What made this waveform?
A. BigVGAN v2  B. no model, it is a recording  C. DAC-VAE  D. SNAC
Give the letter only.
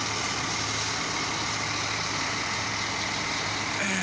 B